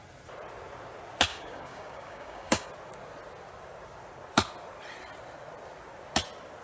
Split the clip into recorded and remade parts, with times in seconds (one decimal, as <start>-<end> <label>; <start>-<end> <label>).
0.0-1.3 recorded; 1.3-2.7 remade; 2.7-6.6 recorded